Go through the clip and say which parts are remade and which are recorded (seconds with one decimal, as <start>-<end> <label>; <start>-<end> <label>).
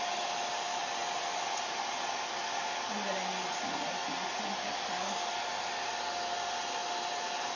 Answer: 0.0-7.6 recorded